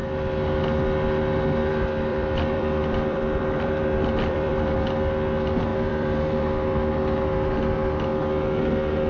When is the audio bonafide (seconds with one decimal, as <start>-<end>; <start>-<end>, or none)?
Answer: 0.0-2.1; 4.5-5.7; 6.4-9.1